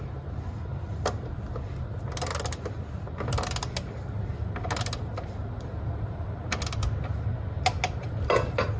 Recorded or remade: recorded